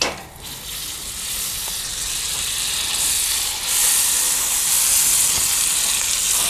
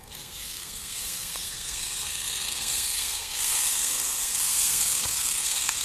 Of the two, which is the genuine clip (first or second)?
first